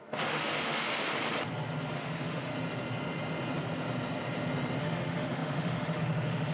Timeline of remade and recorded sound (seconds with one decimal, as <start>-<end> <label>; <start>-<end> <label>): 0.0-1.1 remade; 1.1-1.9 recorded; 1.9-2.5 remade; 2.5-4.8 recorded; 4.8-6.5 remade